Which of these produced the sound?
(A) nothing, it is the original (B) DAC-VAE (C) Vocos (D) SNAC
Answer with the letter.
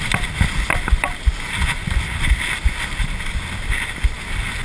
A